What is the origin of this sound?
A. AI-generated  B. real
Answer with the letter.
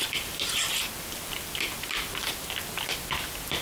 B